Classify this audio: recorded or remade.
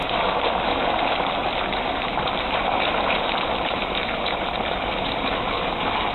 remade